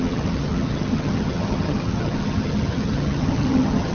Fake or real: fake